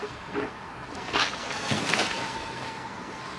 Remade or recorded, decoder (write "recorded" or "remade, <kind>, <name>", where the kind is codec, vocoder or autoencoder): remade, codec, SNAC